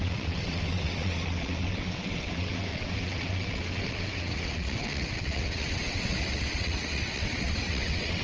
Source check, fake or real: fake